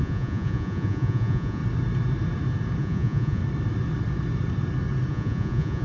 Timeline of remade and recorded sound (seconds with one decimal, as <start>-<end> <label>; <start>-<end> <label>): 0.0-1.6 remade; 1.6-2.8 recorded; 2.8-3.4 remade; 3.4-5.1 recorded; 5.1-5.8 remade